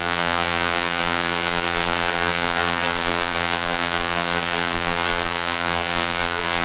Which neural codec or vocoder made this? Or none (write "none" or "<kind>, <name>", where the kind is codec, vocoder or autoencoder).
vocoder, BigVGAN v2